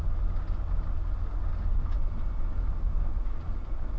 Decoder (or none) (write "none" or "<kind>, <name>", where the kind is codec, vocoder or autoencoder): none